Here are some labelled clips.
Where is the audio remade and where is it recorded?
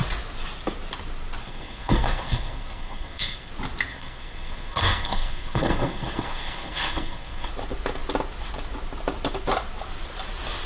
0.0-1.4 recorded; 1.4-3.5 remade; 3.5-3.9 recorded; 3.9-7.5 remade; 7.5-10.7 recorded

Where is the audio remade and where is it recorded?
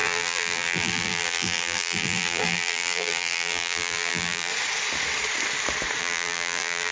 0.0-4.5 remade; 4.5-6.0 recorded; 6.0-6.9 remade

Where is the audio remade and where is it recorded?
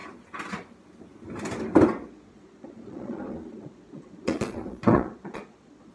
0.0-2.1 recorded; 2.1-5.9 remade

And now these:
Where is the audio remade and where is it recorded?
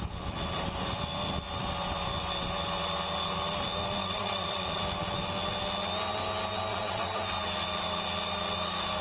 0.0-4.0 recorded; 4.0-4.8 remade; 4.8-6.7 recorded; 6.7-7.2 remade; 7.2-9.0 recorded